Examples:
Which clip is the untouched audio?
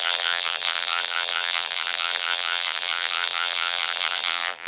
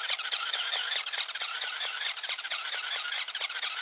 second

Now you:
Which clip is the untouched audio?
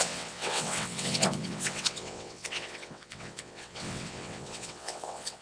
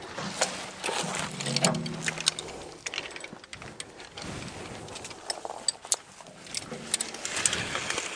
second